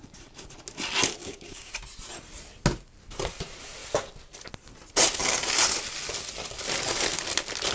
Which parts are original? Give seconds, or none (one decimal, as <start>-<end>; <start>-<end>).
0.0-1.2; 1.7-7.7